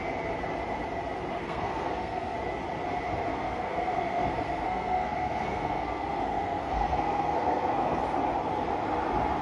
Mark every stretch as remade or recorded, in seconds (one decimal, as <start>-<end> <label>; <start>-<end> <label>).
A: 0.0-1.4 recorded; 1.4-2.4 remade; 2.4-3.3 recorded; 3.3-8.0 remade; 8.0-9.4 recorded